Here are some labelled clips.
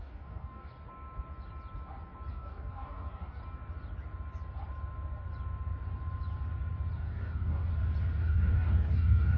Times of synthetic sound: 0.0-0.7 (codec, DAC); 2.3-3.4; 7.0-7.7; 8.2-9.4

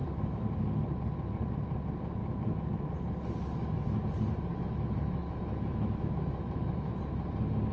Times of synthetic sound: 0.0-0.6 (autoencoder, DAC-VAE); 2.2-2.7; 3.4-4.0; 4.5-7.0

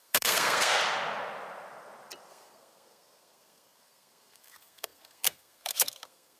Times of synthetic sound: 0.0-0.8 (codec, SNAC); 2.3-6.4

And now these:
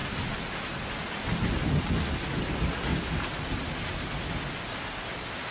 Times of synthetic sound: 2.9-4.1 (vocoder, BigVGAN v2)

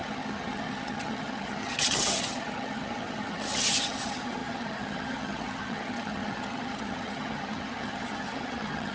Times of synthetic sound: 0.0-8.9 (vocoder, HiFi-GAN)

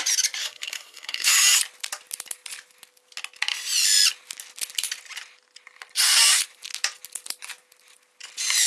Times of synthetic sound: 0.4-1.3 (codec, SNAC)

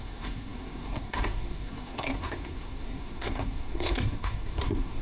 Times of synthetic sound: 0.0-5.0 (codec, SNAC)